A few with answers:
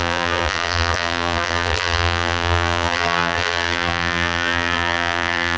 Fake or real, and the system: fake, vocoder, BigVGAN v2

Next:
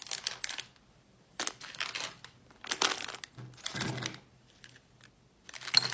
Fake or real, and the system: real